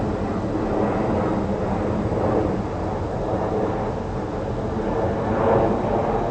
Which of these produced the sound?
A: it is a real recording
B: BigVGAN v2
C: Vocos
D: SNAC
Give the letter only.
A